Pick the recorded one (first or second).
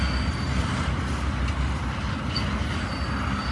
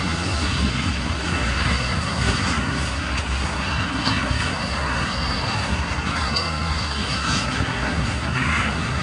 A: first